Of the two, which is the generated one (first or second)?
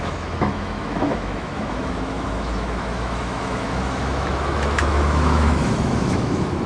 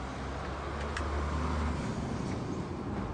first